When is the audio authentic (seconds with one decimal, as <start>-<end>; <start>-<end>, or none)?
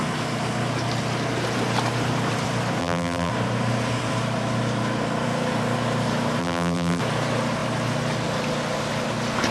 0.0-2.8; 3.3-6.4; 7.0-9.5